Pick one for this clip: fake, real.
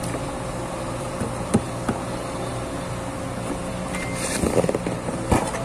real